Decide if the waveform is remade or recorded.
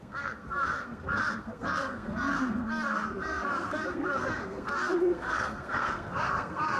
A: remade